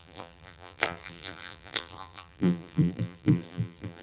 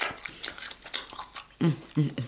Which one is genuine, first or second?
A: second